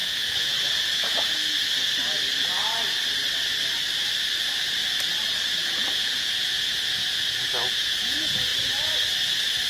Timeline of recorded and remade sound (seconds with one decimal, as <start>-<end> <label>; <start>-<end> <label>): 0.0-1.4 remade; 1.4-5.5 recorded; 5.5-8.5 remade; 8.5-9.7 recorded